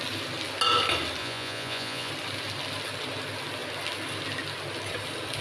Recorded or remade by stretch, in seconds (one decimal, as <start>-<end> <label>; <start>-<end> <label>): 0.0-1.2 recorded; 1.2-2.1 remade; 2.1-5.4 recorded

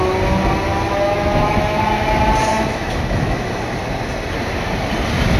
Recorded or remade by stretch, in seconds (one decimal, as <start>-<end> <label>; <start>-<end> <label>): 0.0-0.7 recorded; 0.7-1.8 remade; 1.8-2.5 recorded; 2.5-3.6 remade; 3.6-5.4 recorded

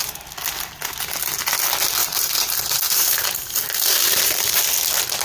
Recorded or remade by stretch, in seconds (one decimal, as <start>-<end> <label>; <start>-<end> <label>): 0.0-2.0 recorded; 2.0-4.6 remade; 4.6-5.2 recorded

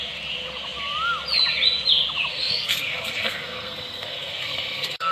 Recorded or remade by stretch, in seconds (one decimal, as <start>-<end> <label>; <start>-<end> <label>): 0.0-2.3 recorded; 2.3-5.1 remade